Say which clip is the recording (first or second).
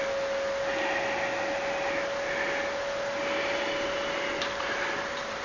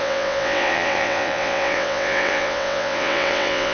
first